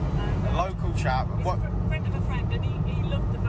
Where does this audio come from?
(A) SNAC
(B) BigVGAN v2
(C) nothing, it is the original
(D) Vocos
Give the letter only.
C